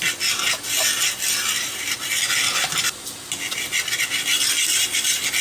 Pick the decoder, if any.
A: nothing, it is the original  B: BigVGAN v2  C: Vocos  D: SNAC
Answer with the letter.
A